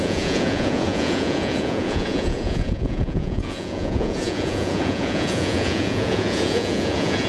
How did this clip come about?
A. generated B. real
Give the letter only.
A